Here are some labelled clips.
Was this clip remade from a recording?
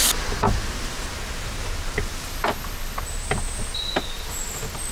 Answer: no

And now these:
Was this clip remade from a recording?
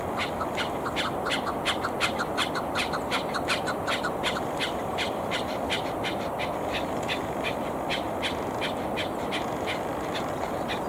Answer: no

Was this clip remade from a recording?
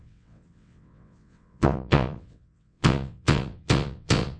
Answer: yes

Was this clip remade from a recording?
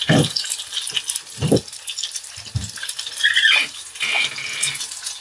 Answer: no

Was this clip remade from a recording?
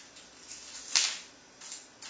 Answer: no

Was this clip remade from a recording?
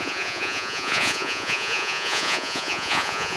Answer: yes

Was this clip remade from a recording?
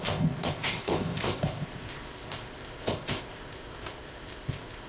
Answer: yes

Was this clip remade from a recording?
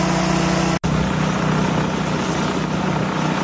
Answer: no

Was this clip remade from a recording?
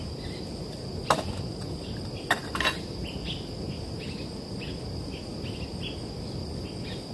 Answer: no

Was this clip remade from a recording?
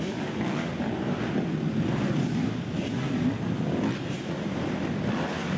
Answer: yes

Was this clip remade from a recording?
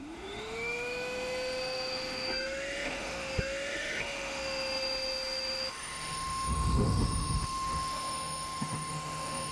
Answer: yes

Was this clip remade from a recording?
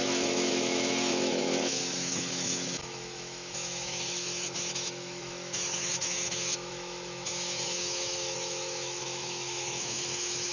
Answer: yes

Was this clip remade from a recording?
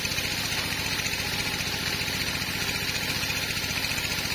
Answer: no